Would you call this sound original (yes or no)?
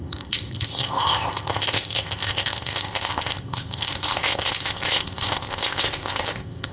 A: no